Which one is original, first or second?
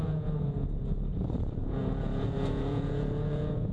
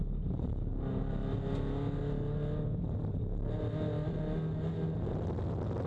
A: second